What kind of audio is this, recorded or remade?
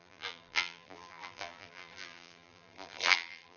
remade